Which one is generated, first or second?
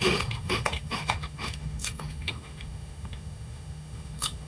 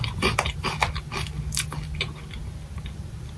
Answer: first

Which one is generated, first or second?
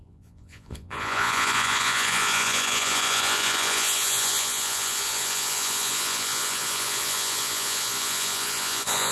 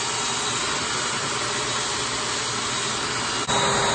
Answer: first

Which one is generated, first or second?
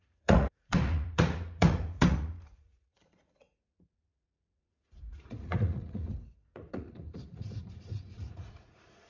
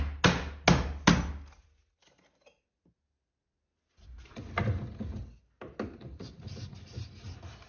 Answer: first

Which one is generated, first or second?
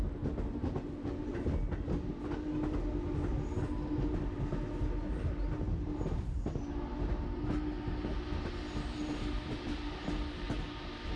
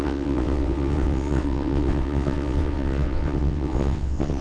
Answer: second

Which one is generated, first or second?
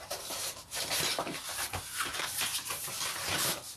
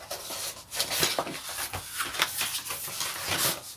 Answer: first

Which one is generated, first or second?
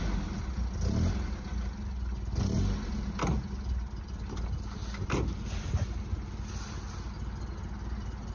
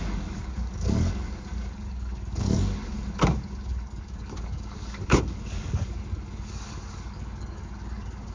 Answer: second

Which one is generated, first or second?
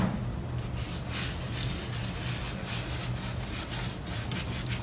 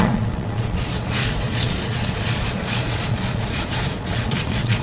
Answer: second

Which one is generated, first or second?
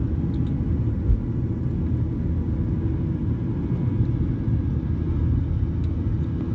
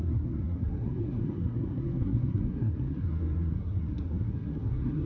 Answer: second